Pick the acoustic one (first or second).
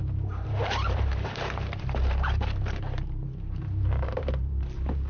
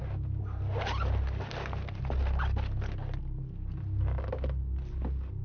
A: second